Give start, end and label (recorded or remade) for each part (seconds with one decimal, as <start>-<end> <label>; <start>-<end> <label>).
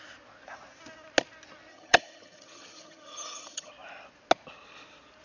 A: 0.0-1.7 recorded; 1.7-3.7 remade; 3.7-5.2 recorded